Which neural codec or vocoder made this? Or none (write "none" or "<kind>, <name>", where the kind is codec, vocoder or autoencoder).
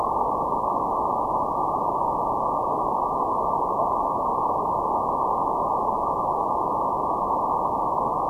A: none